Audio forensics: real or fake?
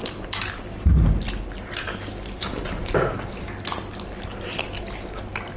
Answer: real